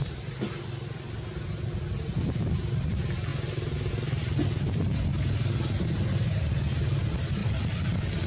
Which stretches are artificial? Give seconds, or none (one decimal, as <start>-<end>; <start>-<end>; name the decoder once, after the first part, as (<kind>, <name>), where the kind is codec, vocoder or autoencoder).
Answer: none